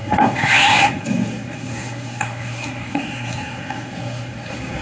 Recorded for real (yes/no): no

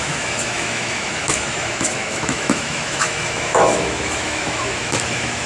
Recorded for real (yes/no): no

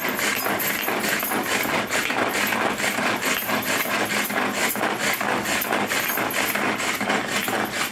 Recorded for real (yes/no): yes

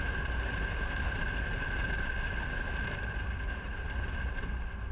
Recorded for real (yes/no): yes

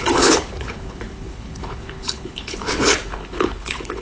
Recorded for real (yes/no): no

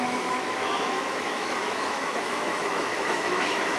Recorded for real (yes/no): no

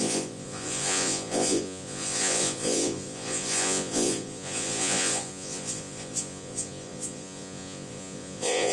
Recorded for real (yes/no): no